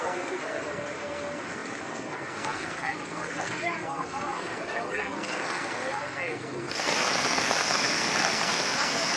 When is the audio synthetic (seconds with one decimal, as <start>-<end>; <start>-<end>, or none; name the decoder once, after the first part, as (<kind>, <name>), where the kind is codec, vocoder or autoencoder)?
0.0-9.2 (codec, SNAC)